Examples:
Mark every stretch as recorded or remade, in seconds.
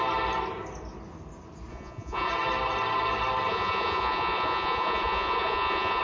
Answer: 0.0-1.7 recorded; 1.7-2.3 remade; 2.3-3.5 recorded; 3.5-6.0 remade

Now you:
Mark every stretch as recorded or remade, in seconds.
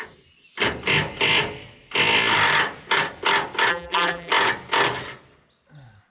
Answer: 0.0-3.7 recorded; 3.7-4.3 remade; 4.3-6.1 recorded